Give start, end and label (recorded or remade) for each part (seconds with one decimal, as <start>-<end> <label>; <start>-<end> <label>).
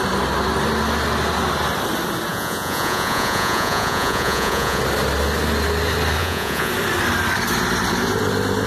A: 0.0-2.3 recorded; 2.3-4.8 remade; 4.8-6.2 recorded; 6.2-6.7 remade; 6.7-8.7 recorded